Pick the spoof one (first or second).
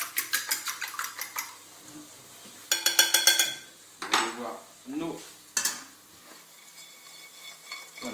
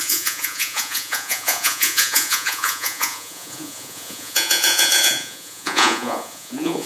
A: second